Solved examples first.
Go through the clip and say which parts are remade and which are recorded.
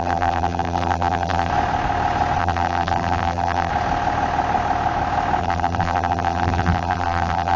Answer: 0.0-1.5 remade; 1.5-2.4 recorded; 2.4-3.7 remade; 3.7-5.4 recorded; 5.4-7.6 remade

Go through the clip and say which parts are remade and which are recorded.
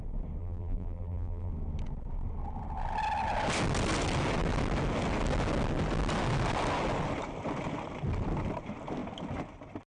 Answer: 0.0-0.4 recorded; 0.4-1.5 remade; 1.5-10.0 recorded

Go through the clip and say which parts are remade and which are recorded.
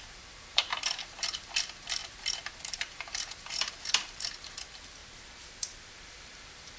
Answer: 0.0-5.0 remade; 5.0-5.5 recorded; 5.5-6.8 remade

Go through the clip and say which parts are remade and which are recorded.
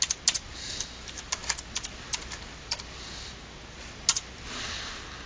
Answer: 0.0-5.3 recorded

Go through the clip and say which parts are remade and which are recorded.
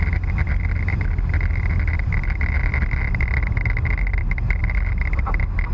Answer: 0.0-0.9 recorded; 0.9-2.7 remade; 2.7-5.7 recorded